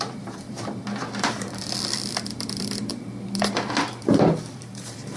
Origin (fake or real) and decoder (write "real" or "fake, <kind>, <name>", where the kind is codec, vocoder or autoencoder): fake, vocoder, BigVGAN v2